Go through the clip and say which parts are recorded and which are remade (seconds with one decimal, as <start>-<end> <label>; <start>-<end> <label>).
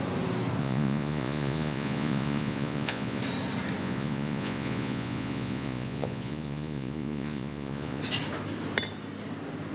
0.0-0.6 recorded; 0.6-3.2 remade; 3.2-3.8 recorded; 3.8-8.0 remade; 8.0-9.7 recorded